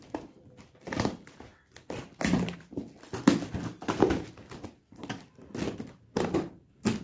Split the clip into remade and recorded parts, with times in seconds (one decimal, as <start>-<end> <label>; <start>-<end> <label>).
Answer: 0.0-7.0 recorded